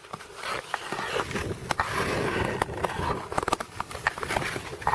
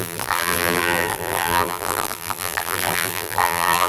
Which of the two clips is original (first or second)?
first